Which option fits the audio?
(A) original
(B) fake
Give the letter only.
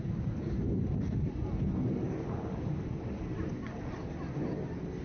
A